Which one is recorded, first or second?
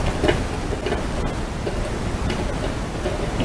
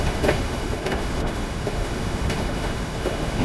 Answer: first